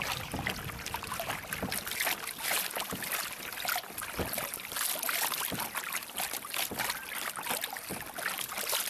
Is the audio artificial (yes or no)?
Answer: no